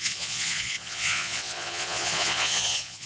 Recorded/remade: remade